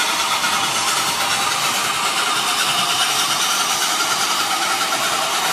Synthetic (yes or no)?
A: no